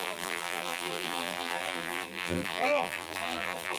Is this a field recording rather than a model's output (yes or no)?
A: no